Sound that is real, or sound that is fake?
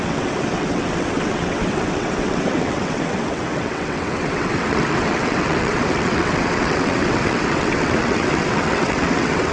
fake